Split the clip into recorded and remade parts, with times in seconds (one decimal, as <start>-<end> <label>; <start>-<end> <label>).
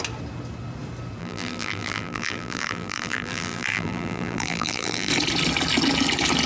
0.0-1.2 recorded; 1.2-5.1 remade; 5.1-6.5 recorded